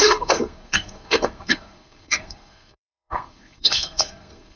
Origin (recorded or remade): remade